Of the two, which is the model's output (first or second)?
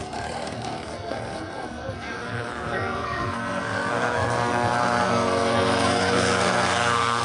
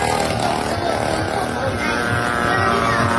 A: first